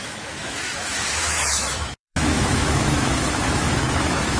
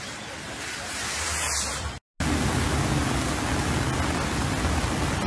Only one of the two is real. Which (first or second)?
second